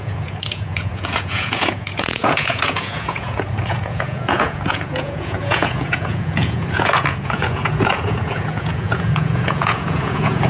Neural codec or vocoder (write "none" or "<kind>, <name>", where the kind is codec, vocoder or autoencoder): vocoder, Vocos